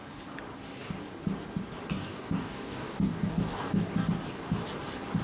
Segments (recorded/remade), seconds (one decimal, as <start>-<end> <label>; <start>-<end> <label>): 0.0-1.9 recorded; 1.9-4.1 remade; 4.1-5.2 recorded

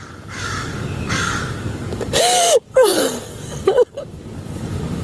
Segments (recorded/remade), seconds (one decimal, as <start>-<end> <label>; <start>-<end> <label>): 0.0-5.0 remade

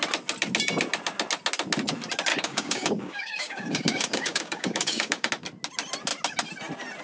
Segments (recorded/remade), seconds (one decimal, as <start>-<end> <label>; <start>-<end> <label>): 0.0-2.3 recorded; 2.3-5.3 remade; 5.3-7.0 recorded

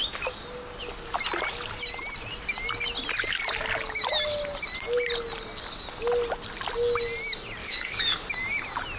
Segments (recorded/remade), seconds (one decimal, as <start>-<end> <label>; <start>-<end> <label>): 0.0-7.6 recorded; 7.6-8.3 remade; 8.3-9.0 recorded

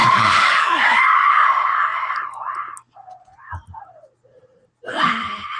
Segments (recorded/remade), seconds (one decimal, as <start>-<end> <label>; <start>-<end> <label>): 0.0-1.3 remade; 1.3-5.6 recorded

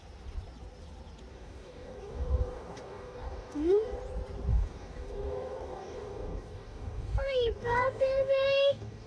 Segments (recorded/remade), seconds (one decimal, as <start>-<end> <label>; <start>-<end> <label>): 0.0-1.3 recorded; 1.3-4.0 remade; 4.0-4.5 recorded; 4.5-9.1 remade

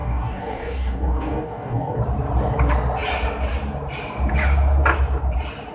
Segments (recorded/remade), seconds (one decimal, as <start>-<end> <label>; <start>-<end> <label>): 0.0-2.0 remade; 2.0-5.7 recorded

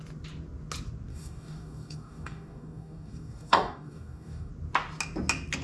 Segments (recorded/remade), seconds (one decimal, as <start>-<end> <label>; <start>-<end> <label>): 0.0-1.1 recorded; 1.1-4.5 remade; 4.5-5.6 recorded